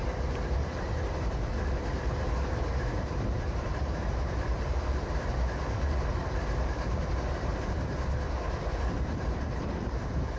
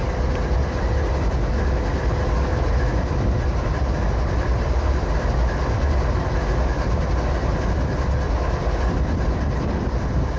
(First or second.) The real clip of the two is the second